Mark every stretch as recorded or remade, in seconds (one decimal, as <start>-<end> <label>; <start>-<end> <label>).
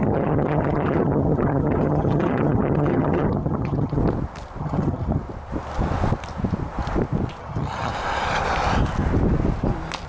0.0-4.0 remade; 4.0-4.6 recorded; 4.6-5.2 remade; 5.2-7.4 recorded; 7.4-7.9 remade; 7.9-10.1 recorded